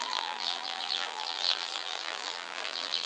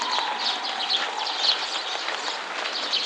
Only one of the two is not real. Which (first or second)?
first